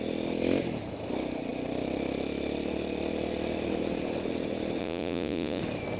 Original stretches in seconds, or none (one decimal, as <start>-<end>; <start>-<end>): 0.0-4.8; 5.6-6.0